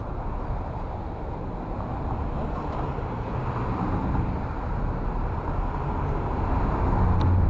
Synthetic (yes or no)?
no